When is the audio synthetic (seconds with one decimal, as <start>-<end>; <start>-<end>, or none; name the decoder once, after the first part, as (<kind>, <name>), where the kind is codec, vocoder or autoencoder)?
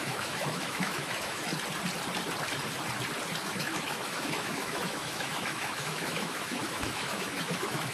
0.0-1.5 (autoencoder, DAC-VAE); 3.4-7.9